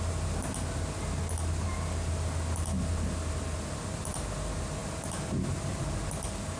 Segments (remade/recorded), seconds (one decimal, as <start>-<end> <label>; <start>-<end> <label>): 0.0-6.6 recorded